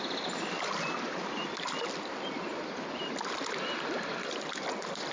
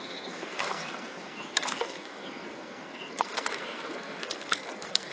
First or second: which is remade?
second